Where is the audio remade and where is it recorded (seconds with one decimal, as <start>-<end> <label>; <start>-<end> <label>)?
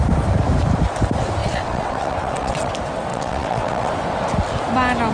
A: 0.0-1.4 recorded; 1.4-2.7 remade; 2.7-3.1 recorded; 3.1-3.9 remade; 3.9-5.1 recorded